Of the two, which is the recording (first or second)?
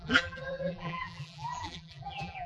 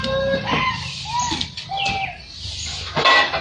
second